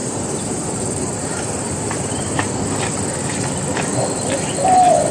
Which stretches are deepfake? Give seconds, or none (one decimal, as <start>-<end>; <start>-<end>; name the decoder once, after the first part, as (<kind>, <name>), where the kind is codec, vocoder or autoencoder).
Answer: 0.0-2.5 (vocoder, BigVGAN v2)